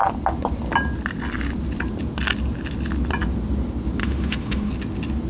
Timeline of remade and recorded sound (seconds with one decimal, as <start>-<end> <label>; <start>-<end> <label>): 0.0-4.0 recorded; 4.0-4.7 remade; 4.7-5.3 recorded